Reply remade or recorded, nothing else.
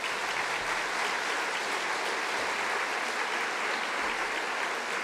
recorded